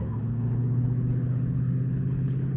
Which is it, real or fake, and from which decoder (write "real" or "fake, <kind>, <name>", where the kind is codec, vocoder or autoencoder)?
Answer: fake, codec, HILCodec